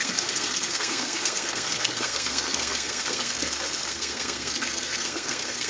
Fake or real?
fake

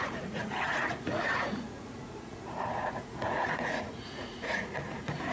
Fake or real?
fake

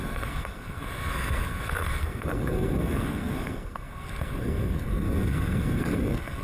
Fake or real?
fake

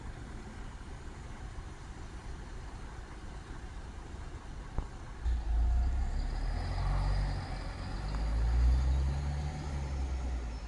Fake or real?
real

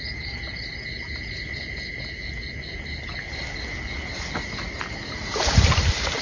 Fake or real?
real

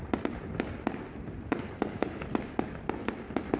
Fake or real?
real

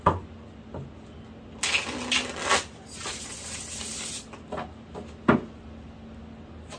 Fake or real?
real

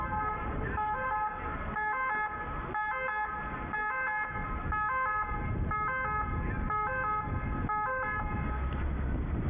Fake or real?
real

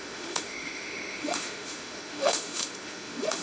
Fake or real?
fake